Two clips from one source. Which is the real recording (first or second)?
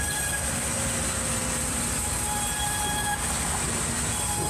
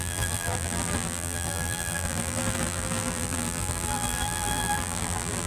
first